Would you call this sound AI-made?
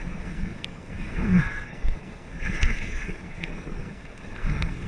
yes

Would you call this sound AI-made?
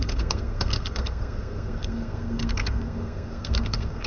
yes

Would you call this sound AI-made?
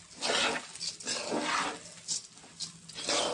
no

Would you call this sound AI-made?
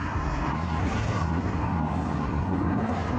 yes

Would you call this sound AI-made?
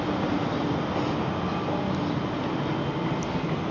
no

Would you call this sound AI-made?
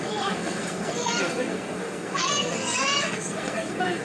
yes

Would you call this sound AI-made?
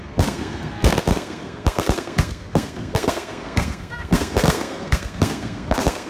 yes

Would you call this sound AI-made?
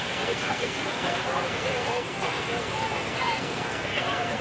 yes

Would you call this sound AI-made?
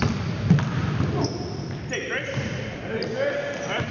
no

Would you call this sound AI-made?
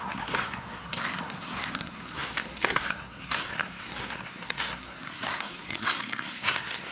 yes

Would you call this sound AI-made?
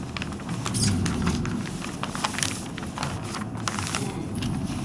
no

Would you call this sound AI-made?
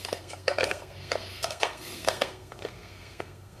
yes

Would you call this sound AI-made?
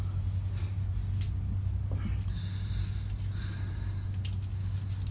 no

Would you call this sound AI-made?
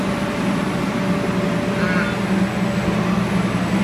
no